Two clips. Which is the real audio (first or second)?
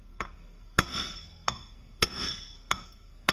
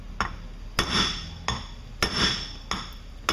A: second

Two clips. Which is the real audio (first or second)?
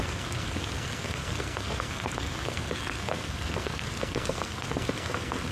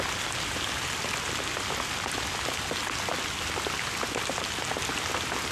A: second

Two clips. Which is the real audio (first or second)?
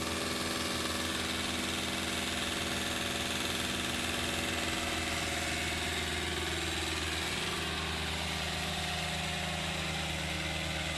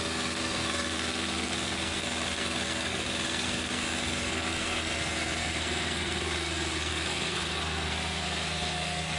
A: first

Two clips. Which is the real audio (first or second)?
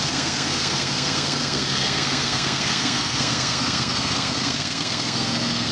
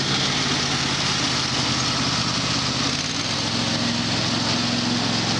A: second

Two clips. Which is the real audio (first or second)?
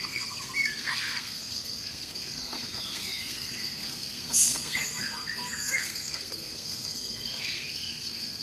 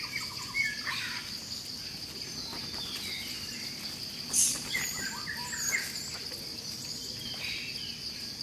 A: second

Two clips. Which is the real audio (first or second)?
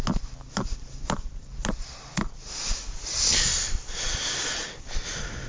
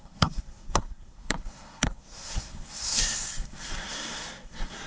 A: first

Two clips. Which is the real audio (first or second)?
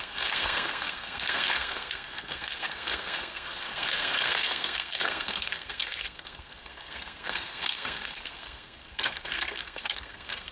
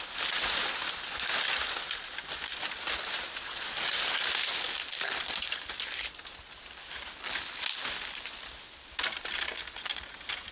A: second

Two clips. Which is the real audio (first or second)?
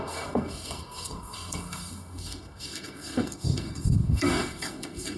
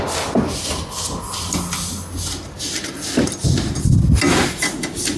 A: second